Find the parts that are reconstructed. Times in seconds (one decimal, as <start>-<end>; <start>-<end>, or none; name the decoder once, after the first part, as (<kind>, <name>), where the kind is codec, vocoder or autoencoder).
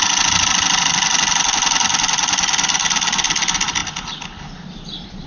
none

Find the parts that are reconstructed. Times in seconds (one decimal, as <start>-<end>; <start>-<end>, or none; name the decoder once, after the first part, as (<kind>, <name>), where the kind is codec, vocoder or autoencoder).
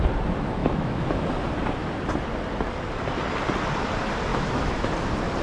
0.6-1.3 (autoencoder, DAC-VAE); 4.3-4.9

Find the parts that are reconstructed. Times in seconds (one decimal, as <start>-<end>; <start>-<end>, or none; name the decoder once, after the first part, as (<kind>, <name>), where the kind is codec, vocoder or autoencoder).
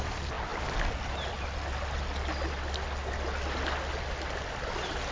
none